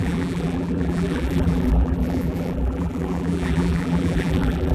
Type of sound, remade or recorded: remade